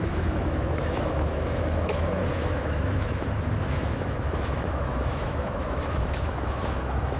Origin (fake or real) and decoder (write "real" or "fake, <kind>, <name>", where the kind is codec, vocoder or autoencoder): fake, autoencoder, DAC-VAE